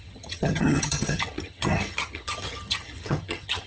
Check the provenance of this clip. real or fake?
fake